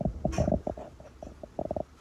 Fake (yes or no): no